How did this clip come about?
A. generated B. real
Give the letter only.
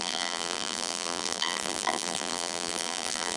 A